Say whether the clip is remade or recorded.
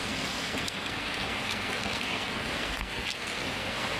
remade